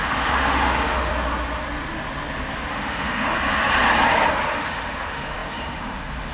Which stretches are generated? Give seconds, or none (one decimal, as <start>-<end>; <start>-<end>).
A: 0.0-1.1; 2.7-3.3; 4.5-6.3